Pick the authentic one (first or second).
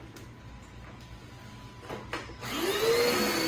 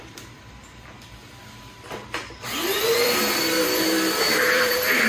first